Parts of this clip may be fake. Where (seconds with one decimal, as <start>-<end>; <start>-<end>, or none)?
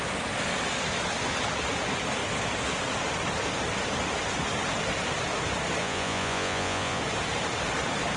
5.8-7.0